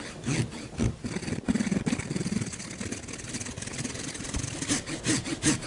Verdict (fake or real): real